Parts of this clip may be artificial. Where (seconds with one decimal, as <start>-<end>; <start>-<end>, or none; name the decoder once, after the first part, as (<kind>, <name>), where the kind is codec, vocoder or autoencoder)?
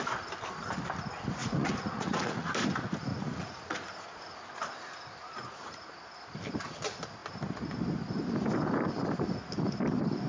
1.4-2.5 (vocoder, Vocos); 3.1-4.2; 5.4-6.0